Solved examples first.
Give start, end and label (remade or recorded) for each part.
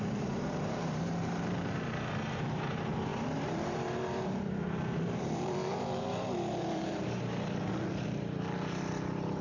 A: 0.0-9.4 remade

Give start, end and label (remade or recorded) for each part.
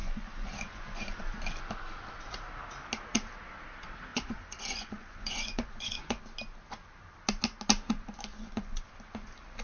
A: 0.0-1.2 remade; 1.2-4.1 recorded; 4.1-6.2 remade; 6.2-8.3 recorded; 8.3-8.9 remade; 8.9-9.6 recorded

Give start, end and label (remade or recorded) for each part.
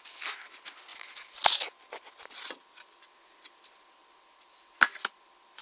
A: 0.0-5.6 recorded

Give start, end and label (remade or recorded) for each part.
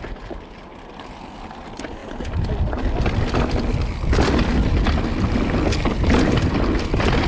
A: 0.0-7.3 remade